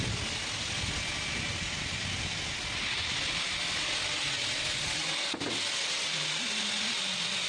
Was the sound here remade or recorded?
recorded